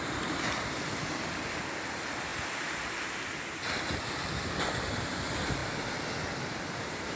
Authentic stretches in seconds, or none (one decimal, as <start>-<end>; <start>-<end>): 0.0-5.6